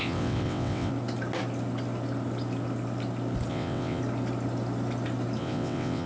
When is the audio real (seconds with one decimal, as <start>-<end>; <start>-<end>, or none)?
0.9-3.5; 4.0-5.4